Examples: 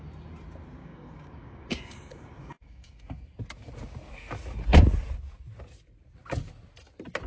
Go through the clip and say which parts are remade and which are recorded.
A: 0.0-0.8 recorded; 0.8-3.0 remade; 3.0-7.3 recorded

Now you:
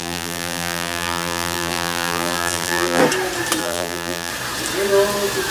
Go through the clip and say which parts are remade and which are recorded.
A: 0.0-3.0 remade; 3.0-3.6 recorded; 3.6-4.3 remade; 4.3-5.5 recorded

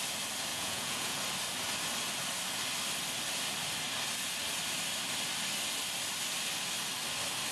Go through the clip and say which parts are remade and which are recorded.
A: 0.0-0.5 recorded; 0.5-1.2 remade; 1.2-7.5 recorded

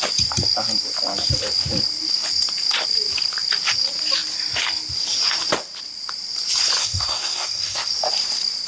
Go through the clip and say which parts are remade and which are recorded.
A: 0.0-6.8 recorded; 6.8-7.9 remade; 7.9-8.7 recorded

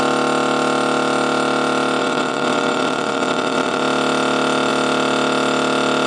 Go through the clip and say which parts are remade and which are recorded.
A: 0.0-2.0 recorded; 2.0-3.8 remade; 3.8-6.1 recorded